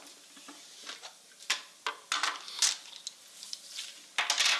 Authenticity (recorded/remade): recorded